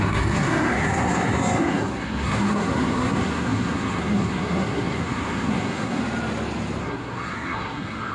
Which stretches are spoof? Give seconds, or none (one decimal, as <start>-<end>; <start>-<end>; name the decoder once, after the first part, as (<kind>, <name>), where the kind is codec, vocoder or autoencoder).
0.0-6.0 (codec, SNAC); 6.8-8.1